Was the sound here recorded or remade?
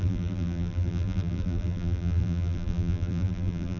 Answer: remade